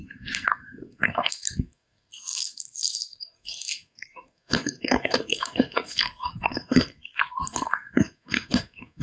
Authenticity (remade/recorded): remade